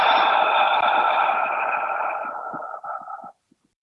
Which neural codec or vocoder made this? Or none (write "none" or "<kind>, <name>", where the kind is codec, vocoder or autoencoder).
vocoder, BigVGAN v2